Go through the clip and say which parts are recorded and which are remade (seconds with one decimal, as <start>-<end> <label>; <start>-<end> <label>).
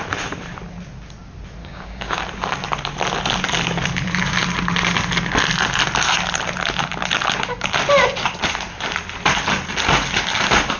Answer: 0.0-1.6 recorded; 1.6-2.2 remade; 2.2-10.8 recorded